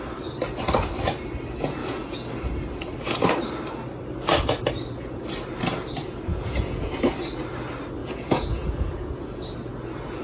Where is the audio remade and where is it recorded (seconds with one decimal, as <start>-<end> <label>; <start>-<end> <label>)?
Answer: 0.0-1.8 recorded; 1.8-2.3 remade; 2.3-6.3 recorded; 6.3-6.9 remade; 6.9-8.0 recorded; 8.0-9.5 remade; 9.5-10.2 recorded